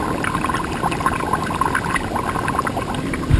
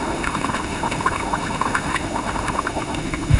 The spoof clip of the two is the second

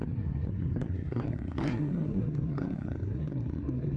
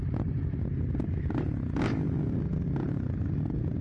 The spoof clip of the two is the first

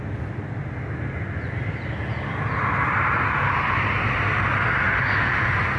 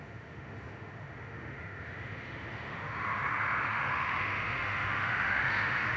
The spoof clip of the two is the second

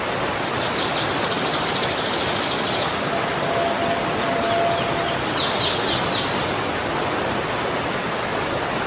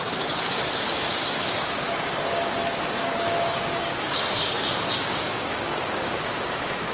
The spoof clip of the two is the second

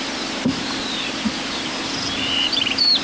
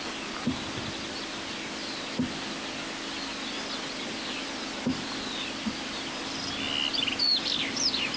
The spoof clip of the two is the first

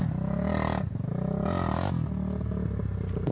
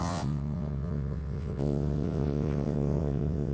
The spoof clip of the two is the second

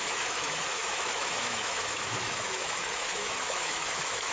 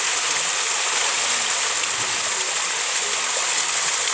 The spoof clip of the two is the first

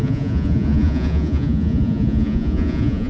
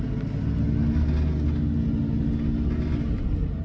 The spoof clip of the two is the first